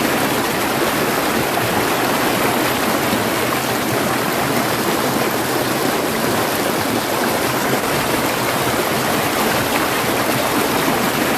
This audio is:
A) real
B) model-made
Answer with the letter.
A